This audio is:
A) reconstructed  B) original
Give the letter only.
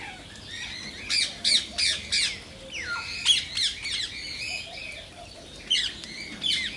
B